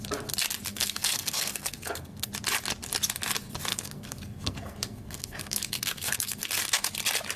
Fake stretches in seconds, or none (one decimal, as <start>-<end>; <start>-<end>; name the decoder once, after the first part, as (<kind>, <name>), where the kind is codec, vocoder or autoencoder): 0.7-2.3 (codec, SNAC); 3.7-6.9